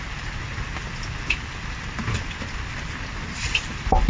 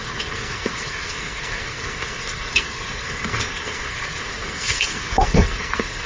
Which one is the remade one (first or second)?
second